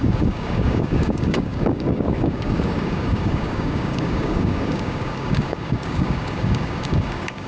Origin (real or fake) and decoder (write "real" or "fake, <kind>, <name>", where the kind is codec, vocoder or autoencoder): fake, codec, DAC